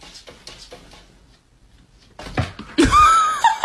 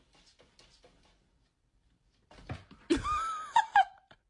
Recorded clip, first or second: first